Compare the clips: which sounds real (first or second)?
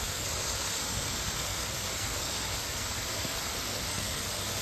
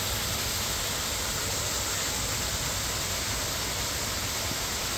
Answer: second